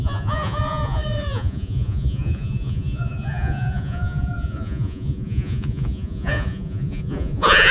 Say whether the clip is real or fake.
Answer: fake